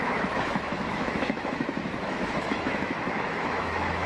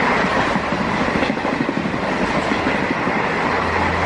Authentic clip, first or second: second